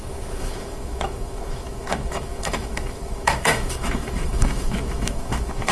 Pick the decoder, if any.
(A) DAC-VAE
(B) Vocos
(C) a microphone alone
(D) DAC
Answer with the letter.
A